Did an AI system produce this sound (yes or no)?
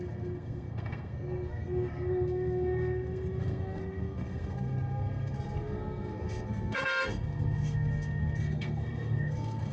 yes